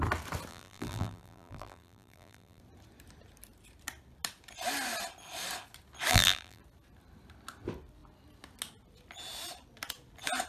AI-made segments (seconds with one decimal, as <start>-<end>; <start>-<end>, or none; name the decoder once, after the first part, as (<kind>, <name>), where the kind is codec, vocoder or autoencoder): 0.5-2.6 (vocoder, BigVGAN v2); 6.1-6.6

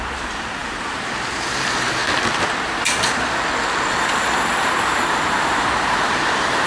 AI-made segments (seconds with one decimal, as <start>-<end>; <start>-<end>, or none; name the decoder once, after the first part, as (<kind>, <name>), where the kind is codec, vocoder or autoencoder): 0.0-2.0 (vocoder, BigVGAN v2); 5.3-6.7

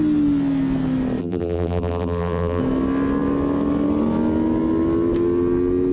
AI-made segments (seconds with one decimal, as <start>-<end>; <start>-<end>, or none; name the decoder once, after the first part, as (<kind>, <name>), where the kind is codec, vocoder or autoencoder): 1.2-2.6 (vocoder, BigVGAN v2)

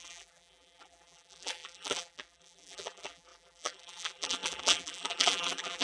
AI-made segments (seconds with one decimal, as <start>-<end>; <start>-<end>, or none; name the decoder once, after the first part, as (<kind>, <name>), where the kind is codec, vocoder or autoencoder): 0.0-5.8 (vocoder, BigVGAN v2)

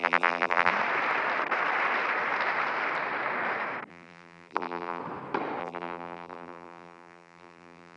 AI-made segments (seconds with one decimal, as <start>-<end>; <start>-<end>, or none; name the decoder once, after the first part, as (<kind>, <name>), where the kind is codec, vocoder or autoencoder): 0.0-0.7 (vocoder, BigVGAN v2); 3.9-5.0; 5.6-8.0

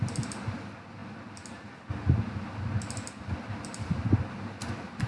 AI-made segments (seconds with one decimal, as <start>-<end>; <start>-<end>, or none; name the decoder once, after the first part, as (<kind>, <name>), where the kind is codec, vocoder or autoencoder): none

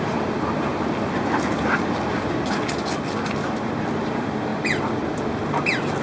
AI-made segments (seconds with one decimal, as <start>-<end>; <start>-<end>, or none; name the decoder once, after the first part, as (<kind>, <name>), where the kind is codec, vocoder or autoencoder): 0.0-0.7 (vocoder, BigVGAN v2); 4.0-4.5